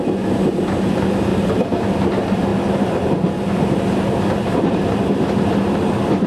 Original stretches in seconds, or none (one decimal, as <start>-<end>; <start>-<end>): 0.0-1.3; 1.8-6.3